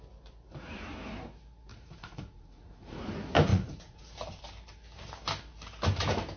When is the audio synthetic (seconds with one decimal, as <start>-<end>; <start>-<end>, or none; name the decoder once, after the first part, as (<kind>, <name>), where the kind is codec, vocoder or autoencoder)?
1.7-3.1 (vocoder, Vocos); 3.5-4.0

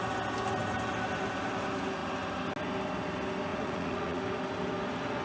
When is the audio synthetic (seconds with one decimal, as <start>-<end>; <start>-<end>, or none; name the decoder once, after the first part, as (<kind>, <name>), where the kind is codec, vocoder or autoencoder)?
3.5-4.2 (vocoder, Vocos)

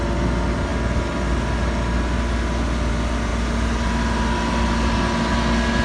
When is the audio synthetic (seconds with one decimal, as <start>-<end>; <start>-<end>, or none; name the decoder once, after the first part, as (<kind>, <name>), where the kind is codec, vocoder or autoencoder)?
none